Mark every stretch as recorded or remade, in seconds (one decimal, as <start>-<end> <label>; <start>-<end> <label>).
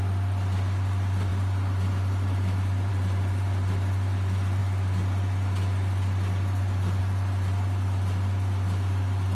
0.0-9.3 recorded